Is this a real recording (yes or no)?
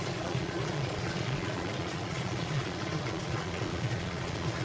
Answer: no